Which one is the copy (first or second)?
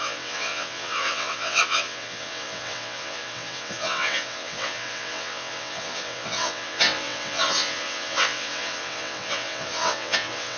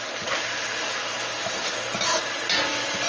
first